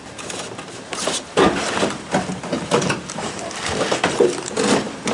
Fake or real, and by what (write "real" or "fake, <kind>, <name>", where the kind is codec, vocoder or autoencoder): fake, vocoder, BigVGAN v2